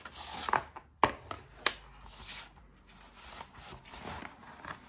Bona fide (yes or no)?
yes